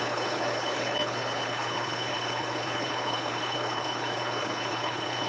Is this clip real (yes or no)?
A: no